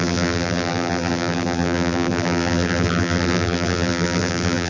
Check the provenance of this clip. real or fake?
fake